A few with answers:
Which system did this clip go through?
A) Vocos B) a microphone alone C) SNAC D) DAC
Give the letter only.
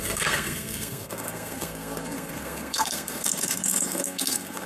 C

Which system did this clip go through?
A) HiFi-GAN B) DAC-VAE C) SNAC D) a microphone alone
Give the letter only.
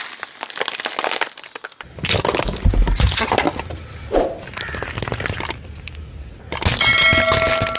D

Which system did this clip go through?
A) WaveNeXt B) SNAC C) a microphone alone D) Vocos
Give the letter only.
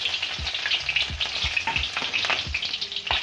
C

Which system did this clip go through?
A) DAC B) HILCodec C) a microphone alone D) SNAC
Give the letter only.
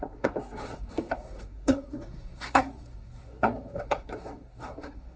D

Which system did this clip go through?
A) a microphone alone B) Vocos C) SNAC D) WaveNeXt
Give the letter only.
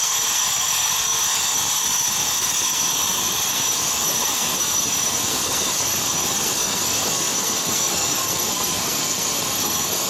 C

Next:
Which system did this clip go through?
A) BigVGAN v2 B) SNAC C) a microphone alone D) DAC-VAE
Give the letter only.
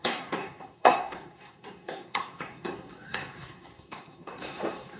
B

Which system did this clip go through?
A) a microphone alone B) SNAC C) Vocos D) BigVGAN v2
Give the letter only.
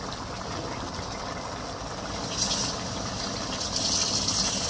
A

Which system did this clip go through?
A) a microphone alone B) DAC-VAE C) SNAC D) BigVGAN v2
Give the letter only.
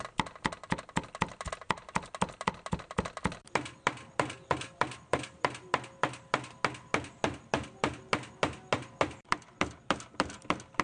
A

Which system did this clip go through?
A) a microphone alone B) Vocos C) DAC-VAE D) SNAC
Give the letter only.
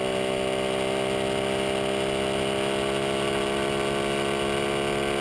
A